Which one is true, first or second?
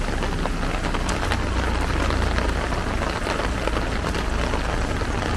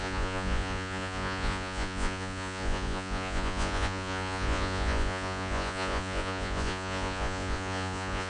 first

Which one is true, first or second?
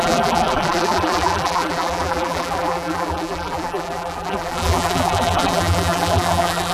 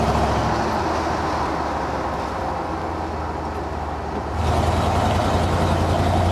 second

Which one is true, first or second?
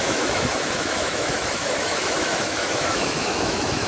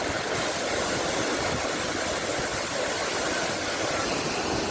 second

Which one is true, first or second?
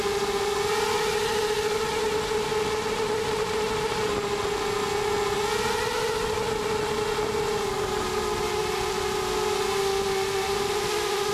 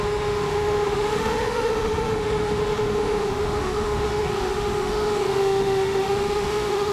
first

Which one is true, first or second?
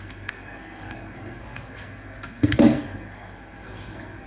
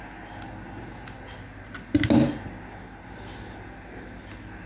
second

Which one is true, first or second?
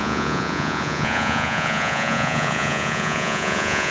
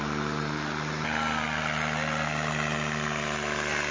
second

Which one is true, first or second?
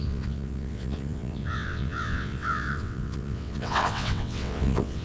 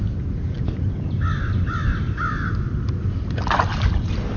second